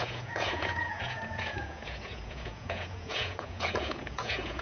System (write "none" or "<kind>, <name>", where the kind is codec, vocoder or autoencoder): vocoder, Vocos